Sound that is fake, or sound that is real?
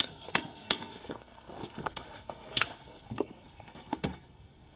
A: fake